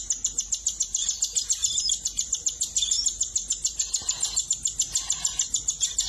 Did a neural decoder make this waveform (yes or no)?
yes